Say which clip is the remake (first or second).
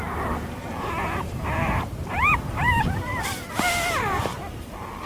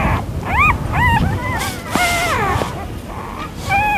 first